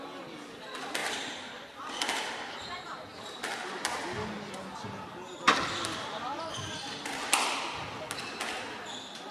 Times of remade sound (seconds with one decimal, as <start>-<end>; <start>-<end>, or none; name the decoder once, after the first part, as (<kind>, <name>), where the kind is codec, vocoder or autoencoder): none

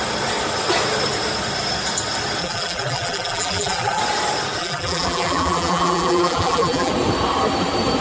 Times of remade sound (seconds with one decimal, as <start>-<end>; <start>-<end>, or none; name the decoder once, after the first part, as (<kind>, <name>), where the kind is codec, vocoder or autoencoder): 2.4-4.0 (vocoder, BigVGAN v2); 4.6-6.9

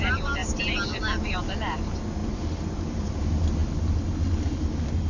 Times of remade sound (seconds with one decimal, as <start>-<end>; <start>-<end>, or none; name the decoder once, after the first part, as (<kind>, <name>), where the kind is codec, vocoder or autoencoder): 2.2-3.1 (vocoder, BigVGAN v2)

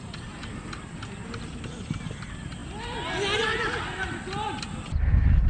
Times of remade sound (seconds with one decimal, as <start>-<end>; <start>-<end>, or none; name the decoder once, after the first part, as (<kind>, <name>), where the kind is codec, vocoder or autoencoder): 1.2-2.0 (vocoder, BigVGAN v2)

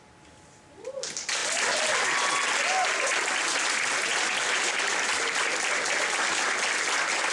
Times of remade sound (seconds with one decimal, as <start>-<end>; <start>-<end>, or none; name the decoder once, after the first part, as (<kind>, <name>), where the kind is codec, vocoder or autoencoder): none